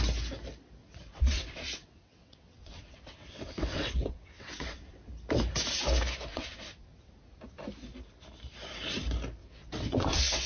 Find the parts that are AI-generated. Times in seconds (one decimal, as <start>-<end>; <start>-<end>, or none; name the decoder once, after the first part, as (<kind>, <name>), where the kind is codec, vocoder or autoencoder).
0.8-5.1 (vocoder, WaveNeXt); 6.3-7.1; 9.4-10.5